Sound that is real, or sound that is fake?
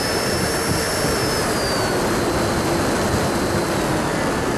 real